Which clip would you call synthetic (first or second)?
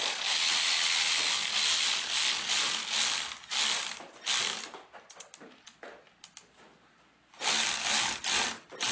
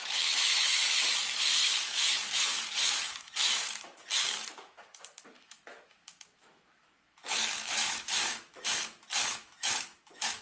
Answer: second